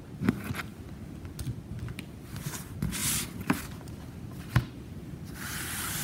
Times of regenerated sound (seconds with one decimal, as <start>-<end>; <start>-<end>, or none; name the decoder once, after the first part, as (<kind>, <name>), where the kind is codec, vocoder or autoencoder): none